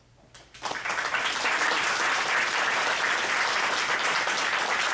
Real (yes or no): yes